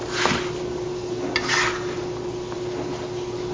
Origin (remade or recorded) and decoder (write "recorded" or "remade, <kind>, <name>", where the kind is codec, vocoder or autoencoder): recorded